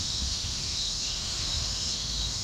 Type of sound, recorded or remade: remade